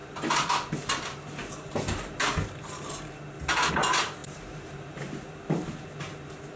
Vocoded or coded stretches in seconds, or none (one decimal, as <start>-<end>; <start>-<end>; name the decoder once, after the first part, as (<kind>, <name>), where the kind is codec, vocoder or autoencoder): 4.2-4.8 (vocoder, BigVGAN v2)